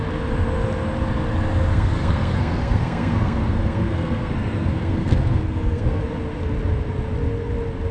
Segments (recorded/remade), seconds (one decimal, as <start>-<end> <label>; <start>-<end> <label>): 0.0-1.7 recorded; 1.7-6.0 remade; 6.0-7.9 recorded